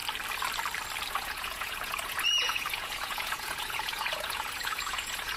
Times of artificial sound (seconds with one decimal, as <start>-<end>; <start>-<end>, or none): 1.1-5.4